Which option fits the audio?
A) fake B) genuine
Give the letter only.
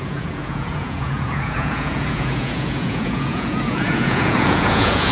A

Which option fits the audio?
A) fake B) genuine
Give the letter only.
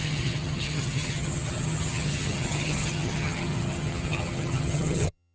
A